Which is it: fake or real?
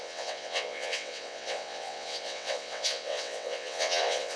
fake